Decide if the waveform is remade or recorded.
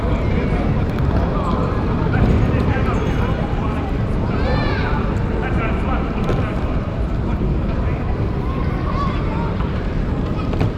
remade